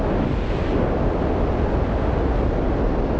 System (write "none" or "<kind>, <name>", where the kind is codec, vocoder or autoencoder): none